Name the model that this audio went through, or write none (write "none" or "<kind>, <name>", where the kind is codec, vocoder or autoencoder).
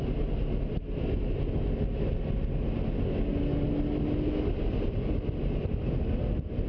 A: none